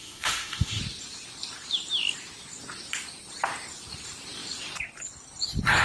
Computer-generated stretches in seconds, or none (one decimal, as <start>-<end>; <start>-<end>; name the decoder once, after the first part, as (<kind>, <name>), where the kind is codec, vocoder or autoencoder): 0.0-0.8 (autoencoder, DAC-VAE)